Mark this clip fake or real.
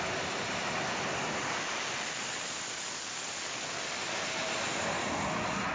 real